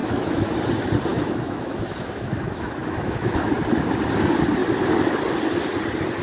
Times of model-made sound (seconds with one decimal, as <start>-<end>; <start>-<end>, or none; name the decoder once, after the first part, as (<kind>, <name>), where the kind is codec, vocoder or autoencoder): 0.0-0.5 (autoencoder, DAC-VAE); 1.1-3.5